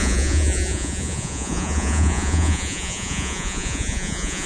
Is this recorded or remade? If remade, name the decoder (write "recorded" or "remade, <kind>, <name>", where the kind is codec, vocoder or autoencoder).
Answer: remade, vocoder, Vocos